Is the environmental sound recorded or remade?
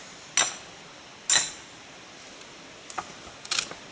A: recorded